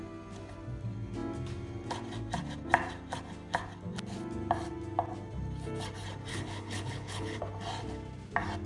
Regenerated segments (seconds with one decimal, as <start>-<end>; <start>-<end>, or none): 6.3-7.4